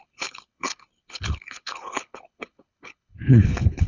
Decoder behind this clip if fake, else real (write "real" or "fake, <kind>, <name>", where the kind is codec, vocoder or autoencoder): fake, codec, HILCodec